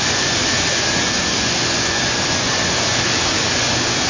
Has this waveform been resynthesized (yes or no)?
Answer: yes